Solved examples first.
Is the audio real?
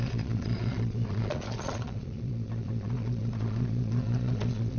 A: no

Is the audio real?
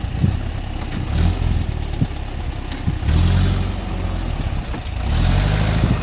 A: yes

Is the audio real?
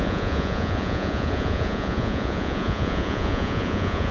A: no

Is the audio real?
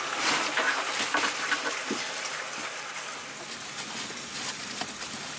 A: yes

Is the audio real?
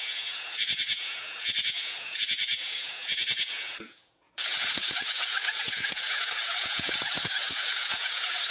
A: no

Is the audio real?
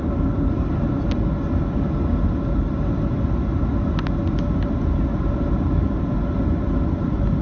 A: yes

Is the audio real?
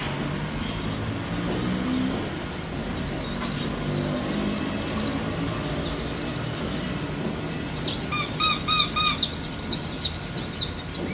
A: yes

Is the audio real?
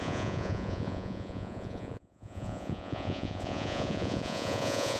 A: no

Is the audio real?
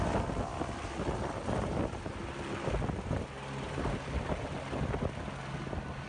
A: yes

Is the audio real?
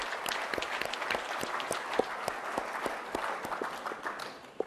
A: yes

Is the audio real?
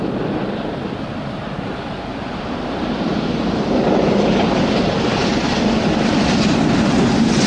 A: yes